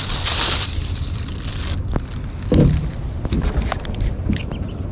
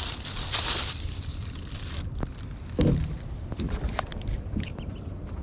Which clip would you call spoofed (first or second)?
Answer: second